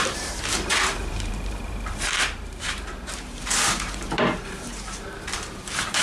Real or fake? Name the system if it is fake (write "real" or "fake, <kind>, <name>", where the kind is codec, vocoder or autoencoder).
fake, vocoder, BigVGAN v2